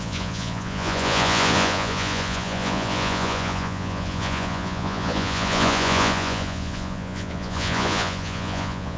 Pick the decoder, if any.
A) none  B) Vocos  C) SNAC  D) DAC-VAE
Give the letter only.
B